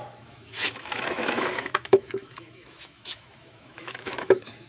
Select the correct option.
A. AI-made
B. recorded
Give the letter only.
A